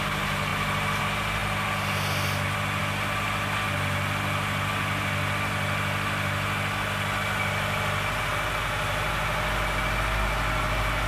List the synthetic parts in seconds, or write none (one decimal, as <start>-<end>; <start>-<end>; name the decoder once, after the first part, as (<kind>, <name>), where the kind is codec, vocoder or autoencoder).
none

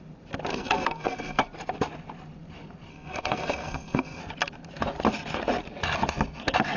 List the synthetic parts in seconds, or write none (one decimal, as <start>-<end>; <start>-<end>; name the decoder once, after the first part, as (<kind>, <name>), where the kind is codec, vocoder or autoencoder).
0.5-1.4 (codec, SNAC); 2.9-4.2

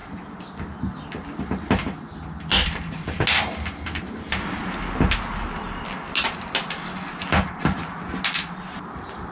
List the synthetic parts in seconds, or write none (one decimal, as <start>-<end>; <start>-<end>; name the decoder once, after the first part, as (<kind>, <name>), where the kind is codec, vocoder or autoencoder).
none

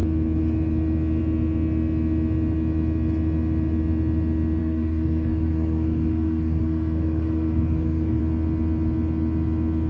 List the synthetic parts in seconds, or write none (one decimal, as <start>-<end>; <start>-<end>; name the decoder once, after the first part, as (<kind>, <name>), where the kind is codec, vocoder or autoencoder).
4.6-8.2 (codec, SNAC)

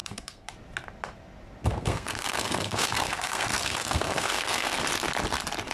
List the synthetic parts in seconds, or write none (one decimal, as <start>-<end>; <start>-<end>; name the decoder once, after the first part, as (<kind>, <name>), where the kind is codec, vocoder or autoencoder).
0.0-0.5 (codec, SNAC); 1.6-4.8